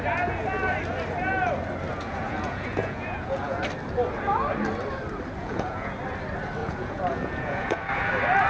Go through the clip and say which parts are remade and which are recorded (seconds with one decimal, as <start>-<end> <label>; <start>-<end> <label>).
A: 0.0-1.9 recorded; 1.9-3.6 remade; 3.6-5.4 recorded; 5.4-5.9 remade; 5.9-6.6 recorded; 6.6-8.1 remade; 8.1-8.5 recorded